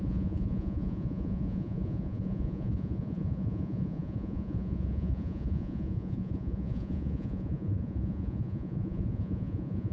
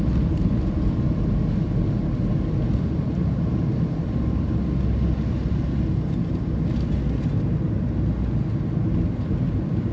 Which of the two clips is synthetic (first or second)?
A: first